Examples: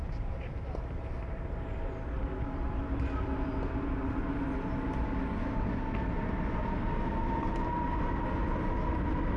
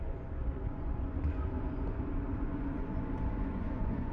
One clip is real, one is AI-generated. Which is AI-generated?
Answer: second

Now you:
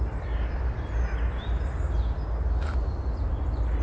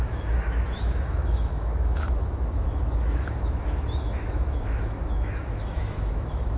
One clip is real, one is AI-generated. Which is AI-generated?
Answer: second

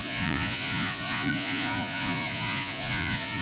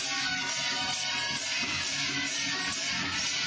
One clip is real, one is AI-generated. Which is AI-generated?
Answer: first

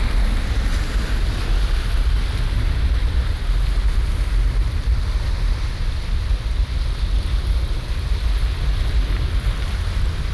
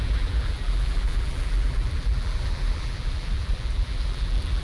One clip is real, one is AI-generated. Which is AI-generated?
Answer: second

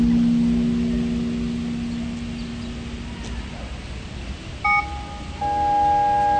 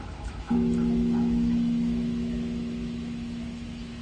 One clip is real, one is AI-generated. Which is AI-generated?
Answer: second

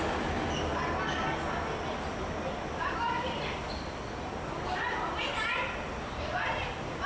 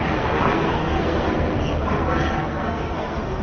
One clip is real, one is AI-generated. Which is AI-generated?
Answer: second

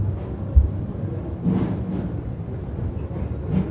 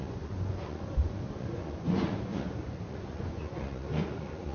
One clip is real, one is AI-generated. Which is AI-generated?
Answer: second